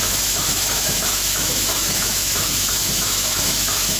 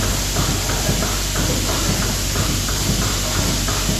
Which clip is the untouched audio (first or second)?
second